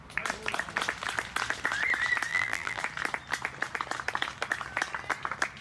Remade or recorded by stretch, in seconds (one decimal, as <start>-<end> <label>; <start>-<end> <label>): 0.0-2.3 recorded; 2.3-2.8 remade; 2.8-5.6 recorded